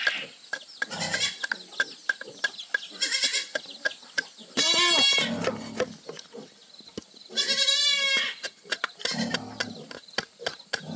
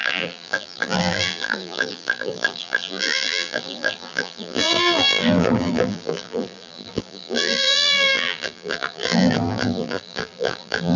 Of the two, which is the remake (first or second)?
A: second